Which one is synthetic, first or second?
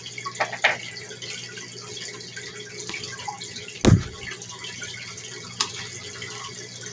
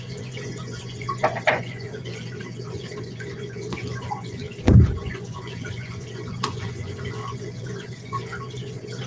second